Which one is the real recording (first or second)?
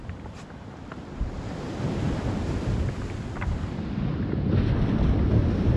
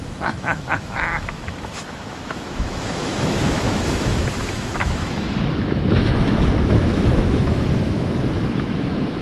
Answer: first